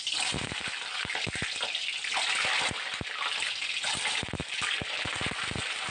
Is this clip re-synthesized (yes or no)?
no